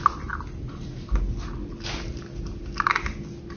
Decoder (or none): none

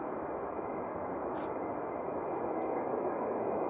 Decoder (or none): autoencoder, DAC-VAE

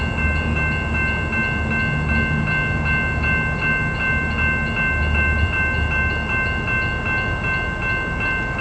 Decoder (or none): none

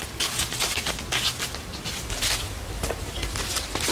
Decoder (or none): none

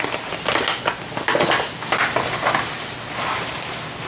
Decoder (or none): none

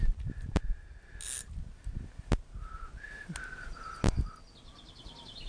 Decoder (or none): none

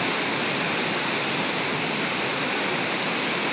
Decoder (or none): none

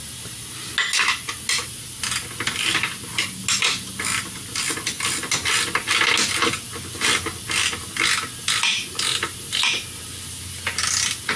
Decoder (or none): none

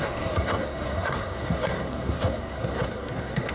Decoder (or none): codec, SNAC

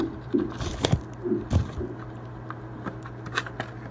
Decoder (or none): none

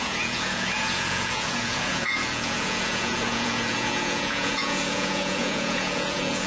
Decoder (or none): vocoder, Vocos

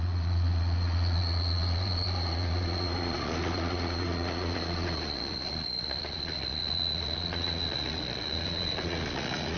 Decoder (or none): vocoder, Vocos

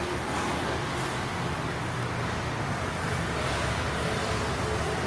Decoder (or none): none